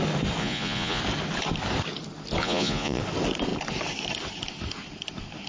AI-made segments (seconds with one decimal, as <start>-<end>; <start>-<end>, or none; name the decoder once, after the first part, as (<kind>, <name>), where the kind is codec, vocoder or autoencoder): 0.4-1.0 (vocoder, Vocos); 2.4-3.0